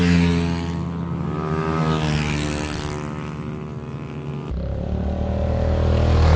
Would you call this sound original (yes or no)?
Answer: yes